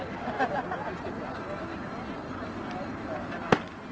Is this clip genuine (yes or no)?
yes